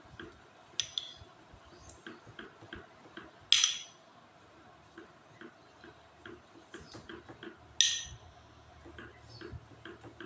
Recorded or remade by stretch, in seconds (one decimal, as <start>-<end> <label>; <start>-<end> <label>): 0.0-10.3 recorded